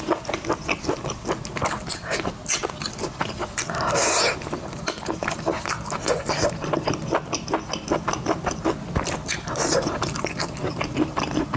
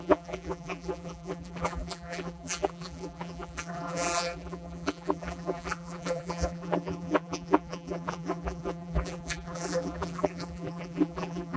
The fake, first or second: second